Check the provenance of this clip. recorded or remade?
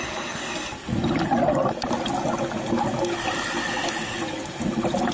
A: recorded